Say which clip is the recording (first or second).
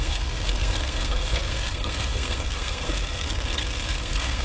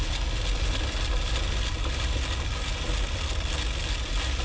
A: second